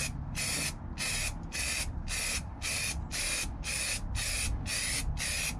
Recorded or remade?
recorded